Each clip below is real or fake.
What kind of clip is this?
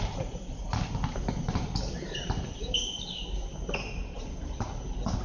real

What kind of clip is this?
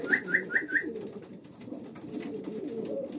real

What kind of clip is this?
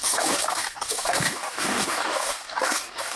fake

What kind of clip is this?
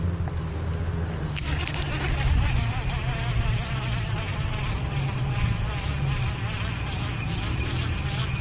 real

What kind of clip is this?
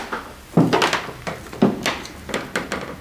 real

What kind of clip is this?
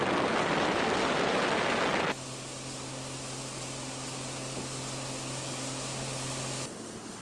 real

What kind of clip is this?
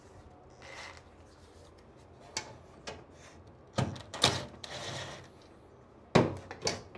real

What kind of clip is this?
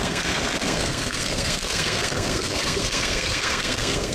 fake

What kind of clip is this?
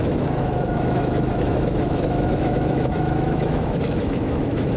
fake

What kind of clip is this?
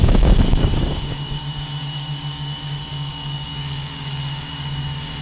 fake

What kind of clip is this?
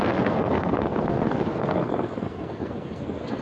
fake